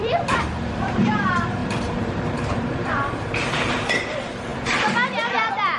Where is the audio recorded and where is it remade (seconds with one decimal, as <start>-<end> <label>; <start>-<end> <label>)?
0.0-5.8 remade